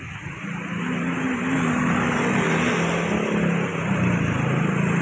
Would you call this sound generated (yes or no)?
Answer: no